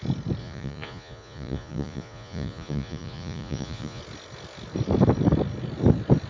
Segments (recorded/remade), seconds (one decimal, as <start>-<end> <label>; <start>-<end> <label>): 0.0-0.4 recorded; 0.4-4.0 remade; 4.0-6.3 recorded